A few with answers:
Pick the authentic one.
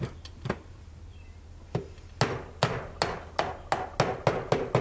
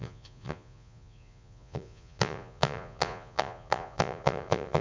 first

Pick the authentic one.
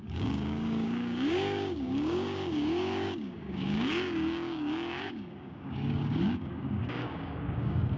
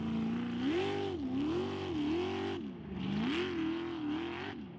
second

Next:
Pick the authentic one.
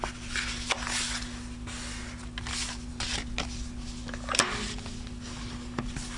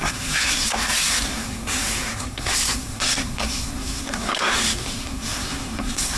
first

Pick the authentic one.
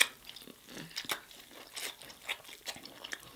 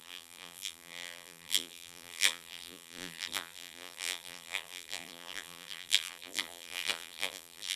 first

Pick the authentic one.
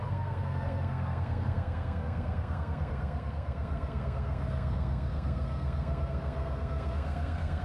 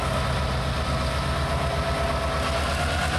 second